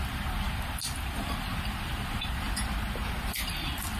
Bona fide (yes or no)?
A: yes